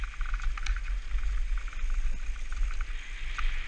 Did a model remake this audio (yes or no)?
no